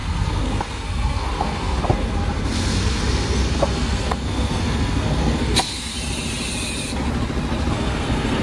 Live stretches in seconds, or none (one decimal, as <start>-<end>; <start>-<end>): 5.9-7.7